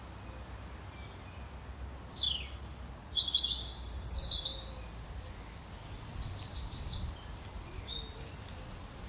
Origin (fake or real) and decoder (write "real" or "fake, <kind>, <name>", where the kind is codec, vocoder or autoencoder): real